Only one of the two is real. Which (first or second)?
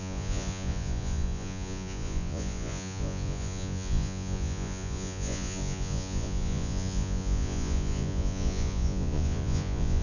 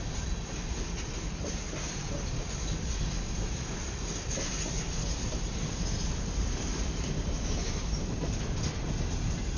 second